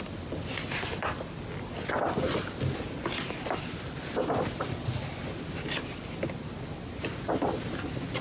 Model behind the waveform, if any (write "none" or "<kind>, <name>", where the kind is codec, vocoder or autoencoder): none